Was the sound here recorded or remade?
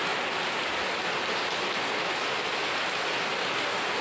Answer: recorded